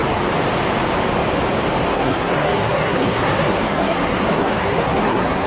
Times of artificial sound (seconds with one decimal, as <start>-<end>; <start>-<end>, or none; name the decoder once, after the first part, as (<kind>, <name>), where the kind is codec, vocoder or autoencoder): 1.9-5.5 (codec, SNAC)